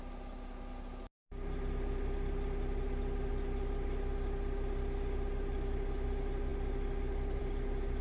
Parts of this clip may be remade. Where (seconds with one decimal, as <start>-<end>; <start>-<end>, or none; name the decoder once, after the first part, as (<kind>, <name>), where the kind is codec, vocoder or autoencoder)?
none